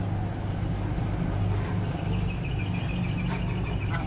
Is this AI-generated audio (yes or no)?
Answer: no